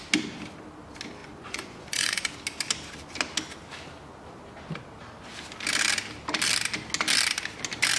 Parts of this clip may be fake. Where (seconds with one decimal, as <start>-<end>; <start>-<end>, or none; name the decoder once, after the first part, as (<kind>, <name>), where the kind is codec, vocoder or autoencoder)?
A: 1.2-2.3 (vocoder, Vocos)